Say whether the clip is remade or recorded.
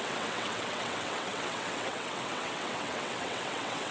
remade